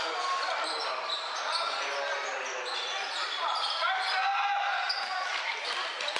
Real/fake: real